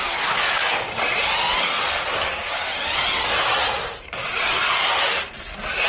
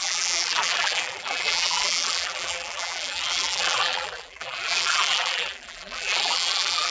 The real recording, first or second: first